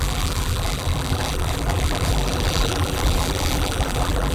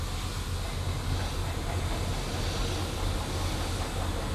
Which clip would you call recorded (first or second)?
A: second